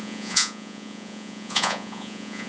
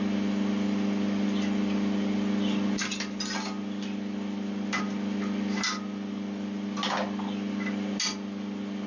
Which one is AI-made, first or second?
first